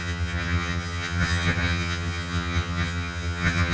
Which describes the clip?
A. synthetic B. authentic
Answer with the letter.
A